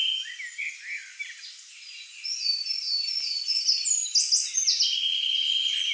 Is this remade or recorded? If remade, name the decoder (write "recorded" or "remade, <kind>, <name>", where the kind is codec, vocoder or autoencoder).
recorded